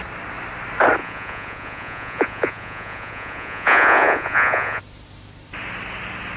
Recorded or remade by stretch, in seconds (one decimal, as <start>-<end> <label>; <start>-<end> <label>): 0.0-1.0 recorded; 1.0-4.8 remade; 4.8-6.4 recorded